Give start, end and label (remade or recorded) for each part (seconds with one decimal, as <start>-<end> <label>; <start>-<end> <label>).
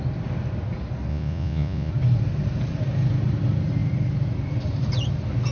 0.0-1.1 recorded; 1.1-1.9 remade; 1.9-5.5 recorded